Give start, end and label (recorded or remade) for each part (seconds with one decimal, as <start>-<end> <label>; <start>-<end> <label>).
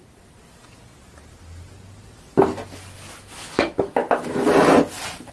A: 0.0-3.2 recorded; 3.2-4.0 remade; 4.0-5.3 recorded